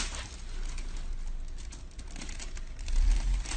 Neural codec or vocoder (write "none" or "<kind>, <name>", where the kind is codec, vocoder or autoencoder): none